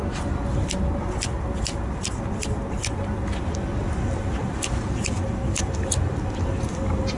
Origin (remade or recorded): recorded